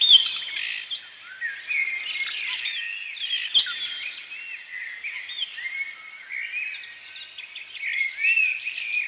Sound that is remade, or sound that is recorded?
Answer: recorded